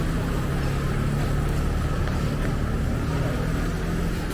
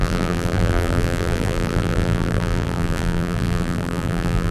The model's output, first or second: second